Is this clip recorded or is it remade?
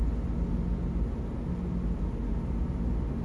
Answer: recorded